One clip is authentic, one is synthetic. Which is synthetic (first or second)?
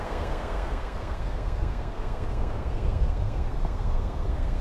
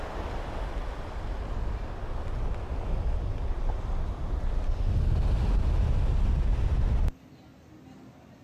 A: first